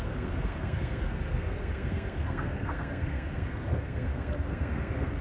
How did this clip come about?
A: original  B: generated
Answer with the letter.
B